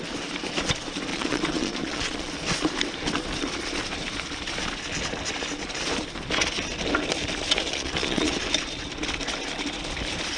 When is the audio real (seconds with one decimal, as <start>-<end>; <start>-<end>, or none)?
0.0-1.1; 2.3-7.7; 8.3-10.4